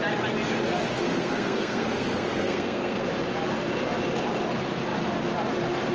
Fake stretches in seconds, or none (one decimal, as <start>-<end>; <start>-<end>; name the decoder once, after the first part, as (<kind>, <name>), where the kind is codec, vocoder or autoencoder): 1.0-3.1 (codec, SNAC)